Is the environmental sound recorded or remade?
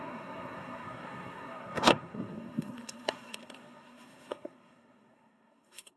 remade